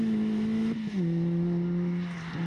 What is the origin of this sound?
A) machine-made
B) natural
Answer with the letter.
B